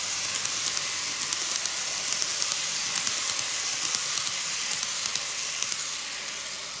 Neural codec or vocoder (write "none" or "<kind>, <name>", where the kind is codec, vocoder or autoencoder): none